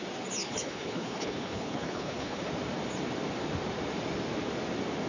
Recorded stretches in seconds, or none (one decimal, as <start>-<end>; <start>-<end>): 0.0-0.4; 2.5-5.1